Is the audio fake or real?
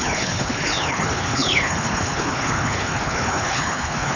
fake